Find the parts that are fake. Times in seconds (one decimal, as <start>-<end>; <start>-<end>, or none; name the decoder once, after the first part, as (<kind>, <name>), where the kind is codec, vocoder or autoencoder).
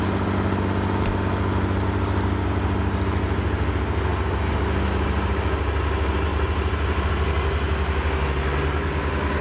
6.3-7.1 (vocoder, BigVGAN v2)